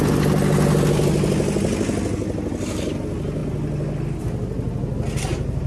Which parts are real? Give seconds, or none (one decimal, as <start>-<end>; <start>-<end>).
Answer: 0.0-5.7